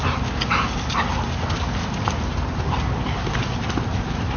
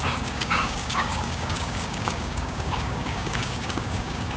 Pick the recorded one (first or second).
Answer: first